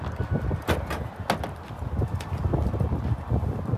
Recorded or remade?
recorded